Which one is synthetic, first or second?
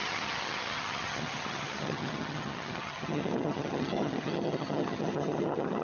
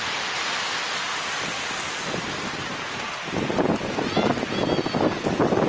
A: first